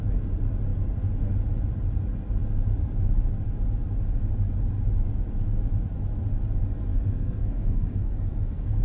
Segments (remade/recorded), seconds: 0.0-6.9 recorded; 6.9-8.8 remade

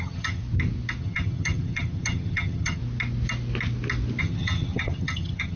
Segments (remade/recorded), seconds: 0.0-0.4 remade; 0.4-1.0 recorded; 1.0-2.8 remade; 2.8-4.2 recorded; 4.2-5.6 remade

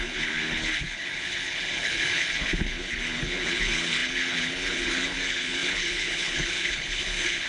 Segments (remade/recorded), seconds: 0.0-7.5 remade

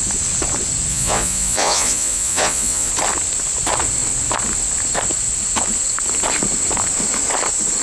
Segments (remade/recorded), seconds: 0.0-0.9 recorded; 0.9-2.9 remade; 2.9-7.8 recorded

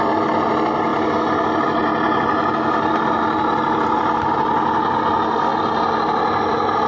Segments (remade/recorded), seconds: 0.0-6.9 recorded

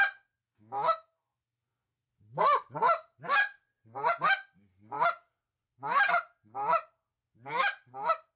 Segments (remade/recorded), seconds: 0.0-0.4 recorded; 0.4-2.1 remade; 2.1-8.4 recorded